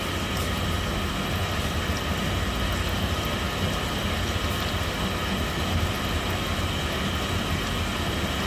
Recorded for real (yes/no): yes